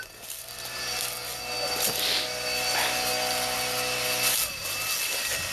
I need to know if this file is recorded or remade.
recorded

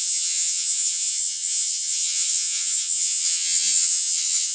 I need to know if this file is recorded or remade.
remade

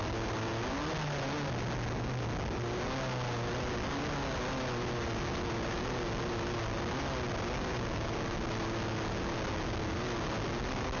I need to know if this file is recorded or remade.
recorded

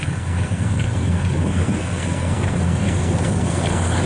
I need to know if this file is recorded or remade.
remade